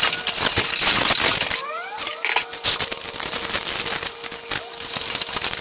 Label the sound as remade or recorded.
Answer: recorded